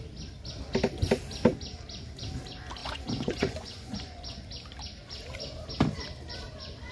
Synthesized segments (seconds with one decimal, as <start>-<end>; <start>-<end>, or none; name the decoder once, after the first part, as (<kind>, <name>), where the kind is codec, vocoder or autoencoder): 2.8-4.5 (vocoder, Vocos)